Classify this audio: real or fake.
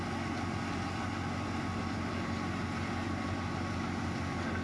real